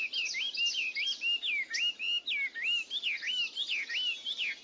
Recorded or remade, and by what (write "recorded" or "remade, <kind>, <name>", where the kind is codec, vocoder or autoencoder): recorded